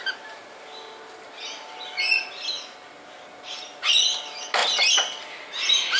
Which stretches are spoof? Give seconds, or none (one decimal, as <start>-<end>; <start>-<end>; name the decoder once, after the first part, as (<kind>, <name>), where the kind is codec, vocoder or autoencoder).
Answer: none